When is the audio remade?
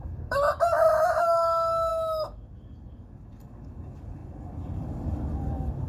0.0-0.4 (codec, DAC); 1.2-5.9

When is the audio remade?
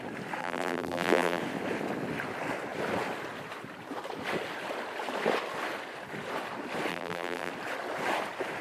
0.4-1.4 (vocoder, BigVGAN v2); 6.9-7.5